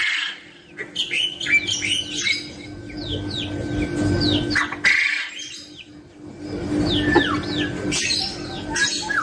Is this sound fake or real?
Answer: real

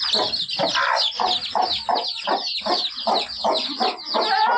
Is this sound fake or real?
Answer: real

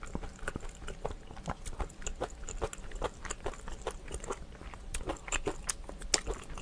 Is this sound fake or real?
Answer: real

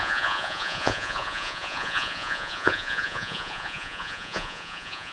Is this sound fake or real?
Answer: fake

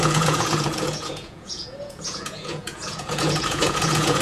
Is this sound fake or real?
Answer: fake